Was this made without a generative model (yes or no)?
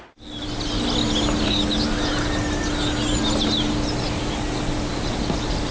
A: yes